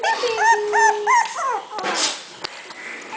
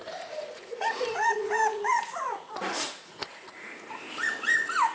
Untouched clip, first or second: first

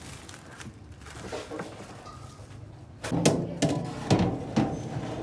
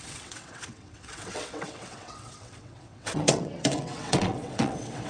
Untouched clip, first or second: first